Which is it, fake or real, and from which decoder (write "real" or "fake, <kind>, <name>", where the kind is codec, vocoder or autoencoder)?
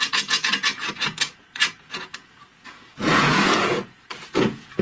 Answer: fake, vocoder, Vocos